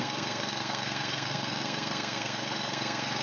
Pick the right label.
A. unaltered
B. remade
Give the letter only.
B